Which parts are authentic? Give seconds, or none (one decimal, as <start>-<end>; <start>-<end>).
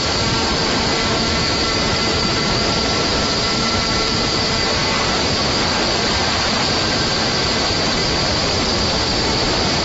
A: 8.0-9.3